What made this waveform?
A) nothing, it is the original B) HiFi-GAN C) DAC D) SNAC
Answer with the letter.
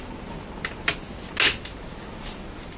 A